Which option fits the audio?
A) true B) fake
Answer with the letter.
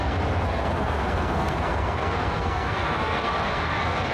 B